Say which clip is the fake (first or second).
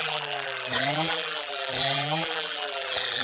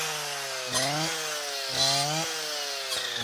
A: first